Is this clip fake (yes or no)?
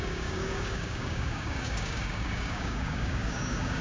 yes